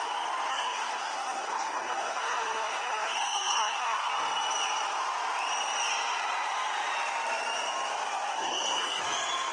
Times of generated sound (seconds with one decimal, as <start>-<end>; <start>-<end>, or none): 0.5-4.1; 8.3-9.0